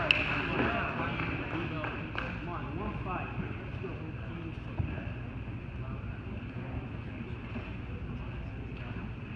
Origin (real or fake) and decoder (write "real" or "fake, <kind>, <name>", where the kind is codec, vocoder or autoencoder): real